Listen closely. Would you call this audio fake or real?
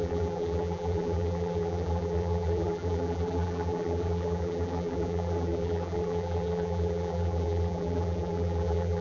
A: fake